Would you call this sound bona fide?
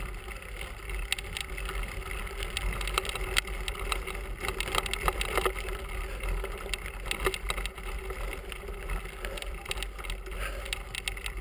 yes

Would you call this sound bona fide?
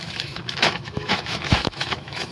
no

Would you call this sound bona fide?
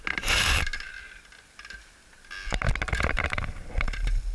yes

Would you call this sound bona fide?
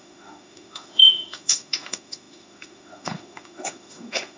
no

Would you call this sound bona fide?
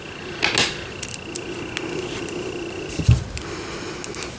yes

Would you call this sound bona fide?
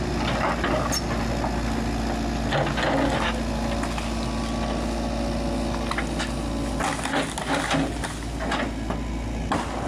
yes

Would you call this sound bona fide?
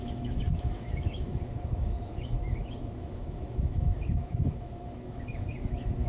no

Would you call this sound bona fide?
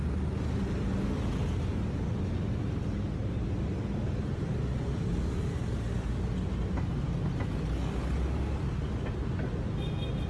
yes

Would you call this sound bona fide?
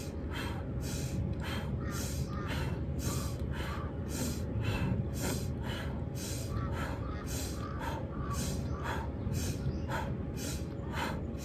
yes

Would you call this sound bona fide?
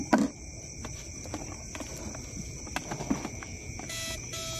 yes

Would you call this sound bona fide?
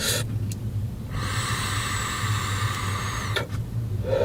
yes